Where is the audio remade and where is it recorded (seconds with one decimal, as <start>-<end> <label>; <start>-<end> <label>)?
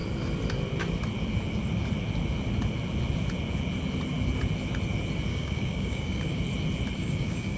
0.0-5.3 recorded; 5.3-6.4 remade; 6.4-7.0 recorded; 7.0-7.6 remade